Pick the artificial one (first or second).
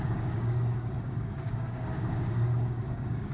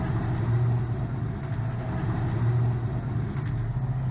first